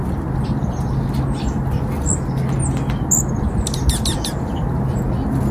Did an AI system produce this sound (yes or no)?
no